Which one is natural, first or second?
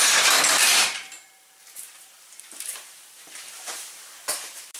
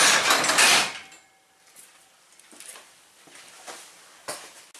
second